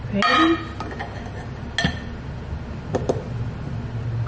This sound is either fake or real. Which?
real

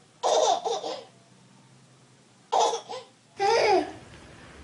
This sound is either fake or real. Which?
real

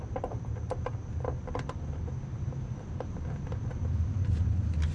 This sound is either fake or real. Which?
real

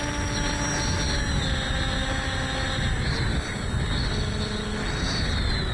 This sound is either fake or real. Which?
real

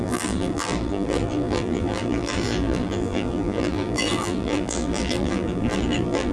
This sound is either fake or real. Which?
fake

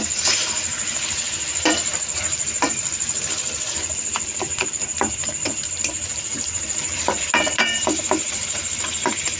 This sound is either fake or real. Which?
fake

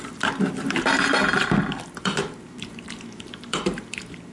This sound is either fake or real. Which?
fake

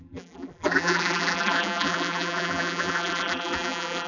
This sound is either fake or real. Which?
fake